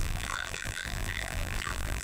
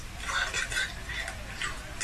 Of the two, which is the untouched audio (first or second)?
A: second